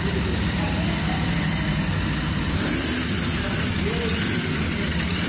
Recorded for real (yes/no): yes